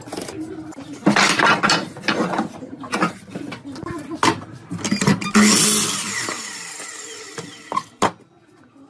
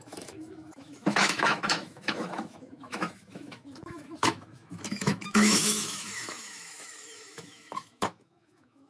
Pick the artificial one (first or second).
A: second